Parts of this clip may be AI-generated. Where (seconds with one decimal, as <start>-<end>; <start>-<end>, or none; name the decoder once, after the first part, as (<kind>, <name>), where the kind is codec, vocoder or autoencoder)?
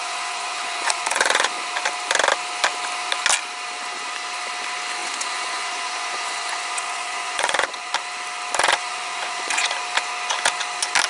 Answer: 0.0-1.7 (vocoder, Vocos); 5.0-7.9; 8.9-9.7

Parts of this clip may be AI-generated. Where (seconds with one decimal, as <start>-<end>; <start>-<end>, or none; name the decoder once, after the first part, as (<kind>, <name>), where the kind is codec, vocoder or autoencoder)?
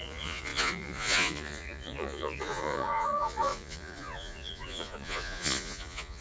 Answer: 0.0-6.2 (vocoder, Vocos)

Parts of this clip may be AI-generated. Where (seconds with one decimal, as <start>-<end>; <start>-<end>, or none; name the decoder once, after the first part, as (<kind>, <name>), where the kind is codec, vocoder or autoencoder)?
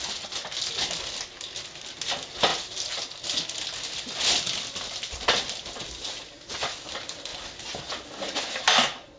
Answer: none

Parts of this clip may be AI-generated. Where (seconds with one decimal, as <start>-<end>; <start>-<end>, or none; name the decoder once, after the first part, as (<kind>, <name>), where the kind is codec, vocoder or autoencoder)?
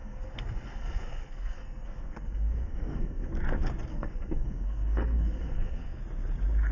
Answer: 0.0-3.3 (codec, SNAC); 3.9-6.0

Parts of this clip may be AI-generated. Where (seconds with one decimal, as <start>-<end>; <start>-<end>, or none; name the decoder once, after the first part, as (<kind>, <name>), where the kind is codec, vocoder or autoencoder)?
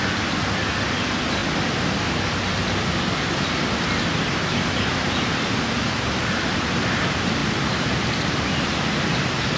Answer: none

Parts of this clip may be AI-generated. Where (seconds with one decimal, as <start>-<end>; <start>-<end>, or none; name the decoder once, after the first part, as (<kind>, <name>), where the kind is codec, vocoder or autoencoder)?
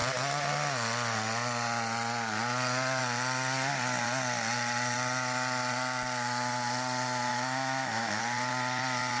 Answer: 7.3-8.2 (autoencoder, DAC-VAE)